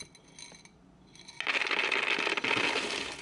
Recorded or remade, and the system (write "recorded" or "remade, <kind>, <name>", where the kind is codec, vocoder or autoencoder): recorded